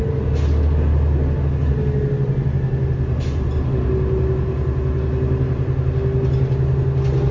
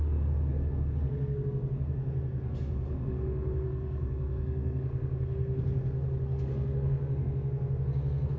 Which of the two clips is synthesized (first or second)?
second